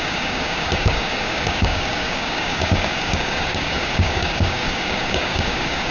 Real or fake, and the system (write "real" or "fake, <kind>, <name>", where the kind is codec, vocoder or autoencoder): fake, codec, DAC